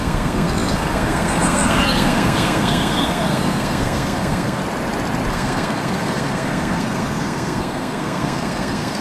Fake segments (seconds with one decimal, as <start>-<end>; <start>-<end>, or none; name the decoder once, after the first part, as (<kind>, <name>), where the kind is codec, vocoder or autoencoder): 0.0-4.6 (codec, SNAC); 5.3-9.0